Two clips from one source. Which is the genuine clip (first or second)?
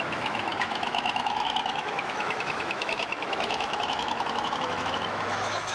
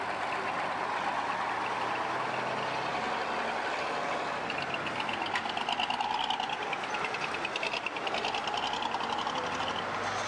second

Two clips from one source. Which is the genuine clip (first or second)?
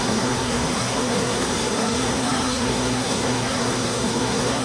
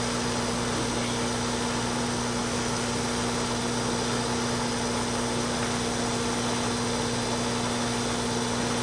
second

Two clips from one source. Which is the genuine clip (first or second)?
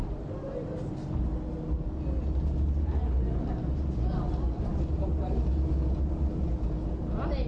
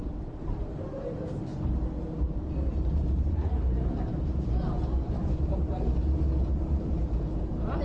first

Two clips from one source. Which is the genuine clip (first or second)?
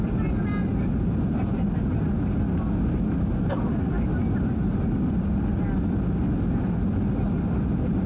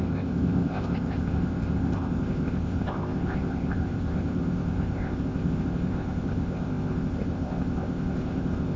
first